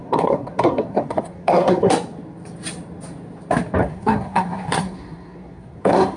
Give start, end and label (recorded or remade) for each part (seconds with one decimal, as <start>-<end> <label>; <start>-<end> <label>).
0.0-1.9 remade; 1.9-3.8 recorded; 3.8-6.2 remade

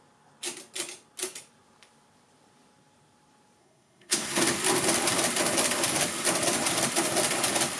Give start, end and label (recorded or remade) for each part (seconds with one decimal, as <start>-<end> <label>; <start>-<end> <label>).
0.0-3.6 recorded; 3.6-4.4 remade; 4.4-7.8 recorded

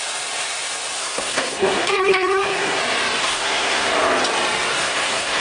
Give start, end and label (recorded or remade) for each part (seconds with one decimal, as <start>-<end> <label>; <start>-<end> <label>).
0.0-1.0 recorded; 1.0-2.8 remade; 2.8-3.2 recorded; 3.2-3.9 remade; 3.9-4.8 recorded; 4.8-5.4 remade